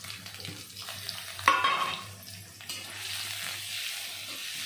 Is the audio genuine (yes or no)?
yes